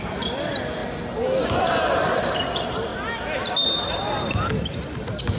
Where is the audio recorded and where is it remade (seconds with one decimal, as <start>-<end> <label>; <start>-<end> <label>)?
0.0-0.8 remade; 0.8-1.6 recorded; 1.6-2.9 remade; 2.9-4.8 recorded; 4.8-5.4 remade